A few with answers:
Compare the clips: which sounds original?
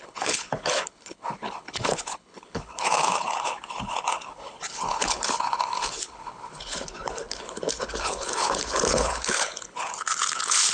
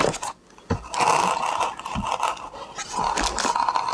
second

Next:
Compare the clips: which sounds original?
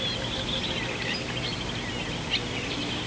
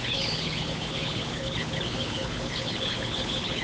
first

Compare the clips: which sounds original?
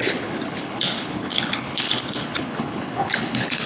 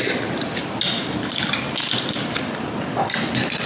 second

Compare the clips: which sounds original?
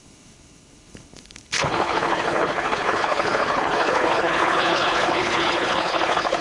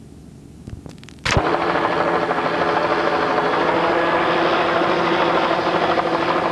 second